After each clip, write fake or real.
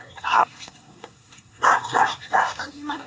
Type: fake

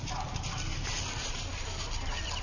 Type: real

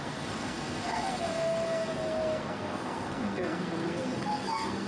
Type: fake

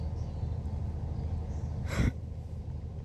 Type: real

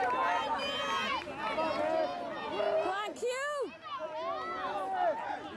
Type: real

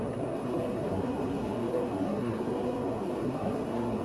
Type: fake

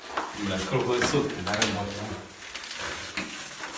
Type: real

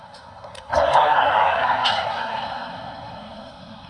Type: fake